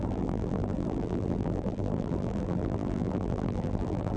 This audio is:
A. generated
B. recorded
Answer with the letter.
A